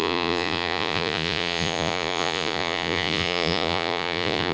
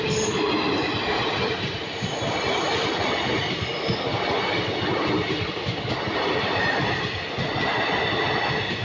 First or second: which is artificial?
first